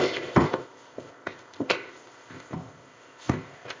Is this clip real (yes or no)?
no